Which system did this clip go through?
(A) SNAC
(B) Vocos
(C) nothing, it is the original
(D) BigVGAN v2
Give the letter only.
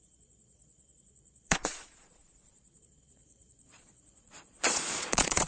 B